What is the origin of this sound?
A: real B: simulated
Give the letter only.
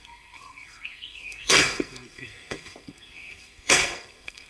B